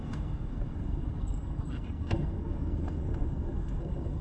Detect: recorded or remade remade